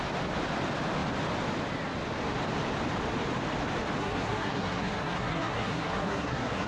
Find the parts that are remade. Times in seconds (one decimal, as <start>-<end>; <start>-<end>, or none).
4.0-6.7